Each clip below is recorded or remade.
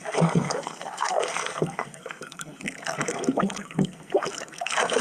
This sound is remade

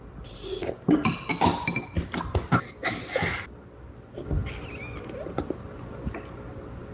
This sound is recorded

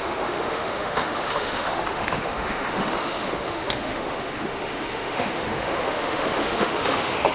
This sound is remade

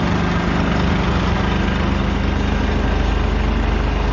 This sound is recorded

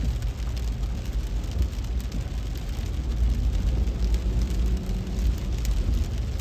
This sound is recorded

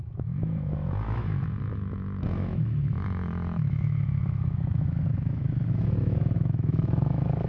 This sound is remade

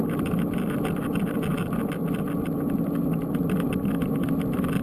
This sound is recorded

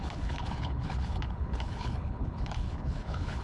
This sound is remade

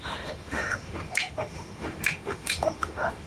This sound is remade